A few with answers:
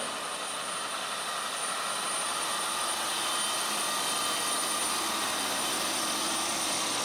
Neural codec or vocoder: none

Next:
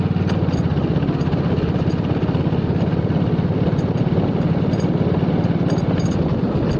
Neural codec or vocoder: none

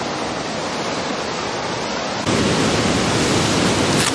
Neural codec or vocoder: none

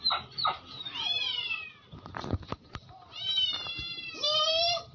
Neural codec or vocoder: vocoder, BigVGAN v2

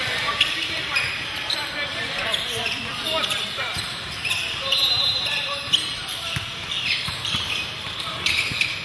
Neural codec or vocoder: vocoder, BigVGAN v2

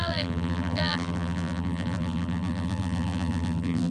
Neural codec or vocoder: vocoder, BigVGAN v2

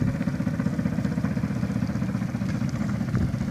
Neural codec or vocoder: none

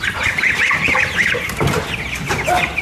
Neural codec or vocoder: none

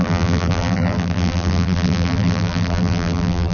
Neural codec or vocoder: vocoder, BigVGAN v2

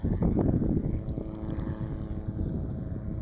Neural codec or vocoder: none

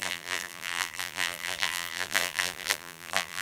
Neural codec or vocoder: vocoder, BigVGAN v2